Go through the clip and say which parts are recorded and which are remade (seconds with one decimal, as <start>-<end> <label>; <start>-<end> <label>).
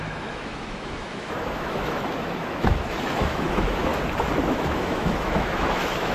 0.0-3.9 remade; 3.9-4.5 recorded; 4.5-6.1 remade